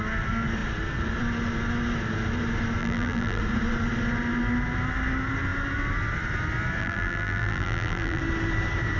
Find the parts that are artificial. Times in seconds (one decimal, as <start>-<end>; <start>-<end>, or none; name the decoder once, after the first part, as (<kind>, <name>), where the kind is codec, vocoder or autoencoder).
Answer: 2.8-3.4 (vocoder, BigVGAN v2); 6.8-8.2